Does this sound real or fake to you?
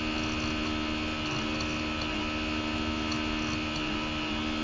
real